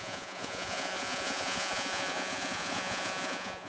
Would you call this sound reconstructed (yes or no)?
yes